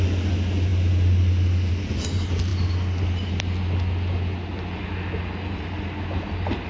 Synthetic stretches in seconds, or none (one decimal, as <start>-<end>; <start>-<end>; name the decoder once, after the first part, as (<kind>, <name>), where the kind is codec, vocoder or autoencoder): none